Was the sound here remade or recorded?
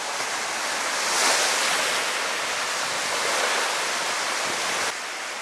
recorded